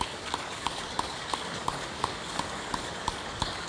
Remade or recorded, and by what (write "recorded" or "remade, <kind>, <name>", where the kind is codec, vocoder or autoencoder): remade, codec, DAC